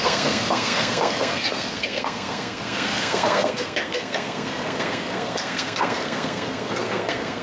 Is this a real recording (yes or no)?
no